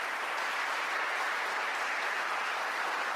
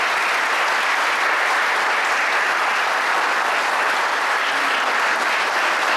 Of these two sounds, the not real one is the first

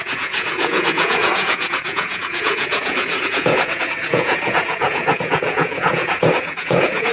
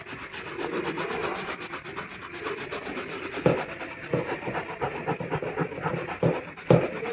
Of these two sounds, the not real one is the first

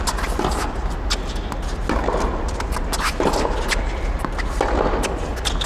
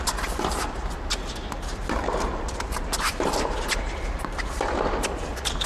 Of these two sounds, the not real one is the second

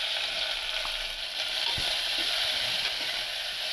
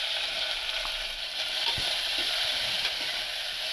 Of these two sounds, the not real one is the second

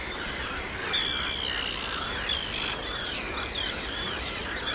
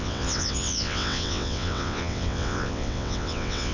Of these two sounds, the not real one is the second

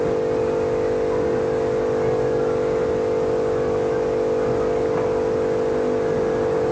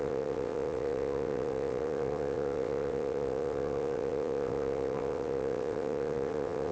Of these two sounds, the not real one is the second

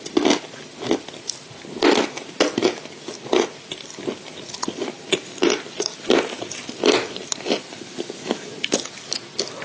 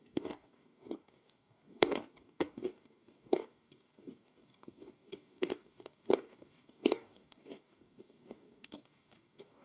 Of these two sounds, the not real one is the second